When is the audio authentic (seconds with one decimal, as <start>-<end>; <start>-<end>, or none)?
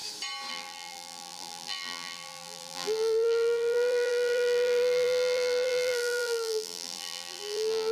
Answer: 0.0-0.5